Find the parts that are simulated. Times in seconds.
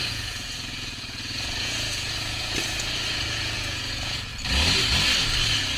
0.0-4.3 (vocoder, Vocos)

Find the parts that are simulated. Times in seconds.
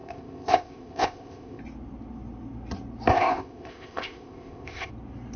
0.0-1.6 (codec, ZipCodec); 3.1-4.9